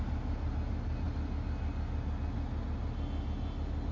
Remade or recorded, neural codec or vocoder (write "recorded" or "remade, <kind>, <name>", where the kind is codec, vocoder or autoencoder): recorded